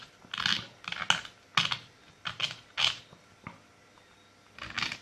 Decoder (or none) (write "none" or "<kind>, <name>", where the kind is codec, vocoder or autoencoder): none